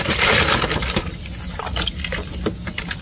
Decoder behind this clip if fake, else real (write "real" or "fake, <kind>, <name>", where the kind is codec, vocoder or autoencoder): real